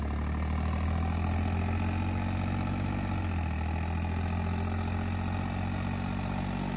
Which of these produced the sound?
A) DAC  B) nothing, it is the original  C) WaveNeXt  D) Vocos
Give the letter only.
B